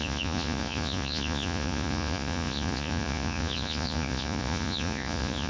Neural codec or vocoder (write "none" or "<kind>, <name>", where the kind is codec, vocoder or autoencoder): vocoder, Vocos